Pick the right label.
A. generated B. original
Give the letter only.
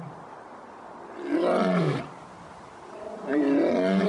B